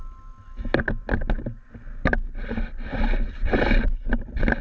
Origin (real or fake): real